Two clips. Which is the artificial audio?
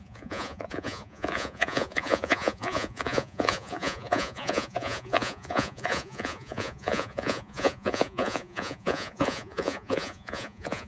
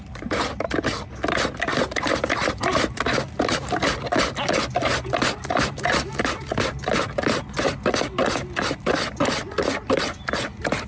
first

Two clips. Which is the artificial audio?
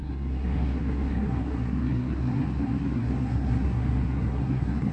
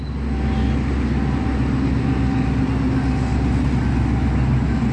first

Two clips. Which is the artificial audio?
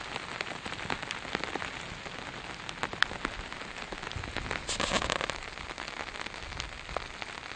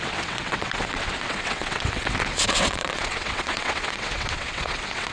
second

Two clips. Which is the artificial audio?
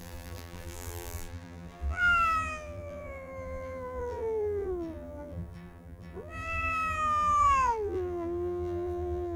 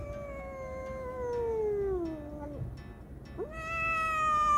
first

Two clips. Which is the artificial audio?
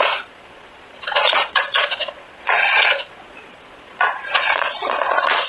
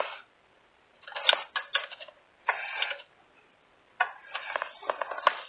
first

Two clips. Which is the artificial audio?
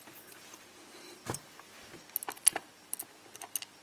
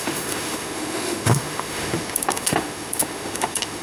second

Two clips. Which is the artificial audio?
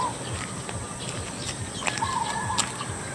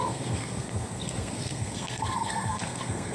second